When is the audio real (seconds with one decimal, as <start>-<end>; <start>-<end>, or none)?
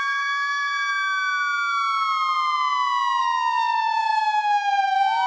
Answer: 0.9-3.2